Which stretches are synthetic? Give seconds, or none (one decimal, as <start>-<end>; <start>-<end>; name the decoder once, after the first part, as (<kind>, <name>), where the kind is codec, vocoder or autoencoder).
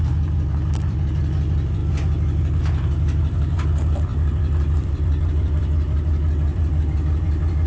0.0-7.7 (vocoder, BigVGAN v2)